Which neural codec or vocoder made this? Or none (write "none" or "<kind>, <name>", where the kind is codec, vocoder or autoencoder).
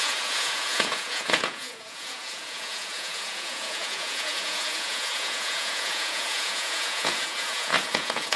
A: vocoder, Vocos